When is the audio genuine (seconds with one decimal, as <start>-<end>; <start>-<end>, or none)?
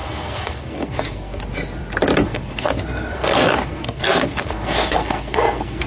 1.4-2.2